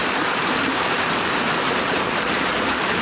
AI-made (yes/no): yes